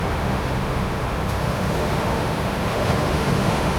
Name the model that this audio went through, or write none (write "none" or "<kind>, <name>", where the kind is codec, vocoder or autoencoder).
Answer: autoencoder, DAC-VAE